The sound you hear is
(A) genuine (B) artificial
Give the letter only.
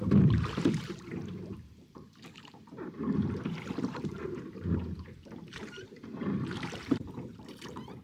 B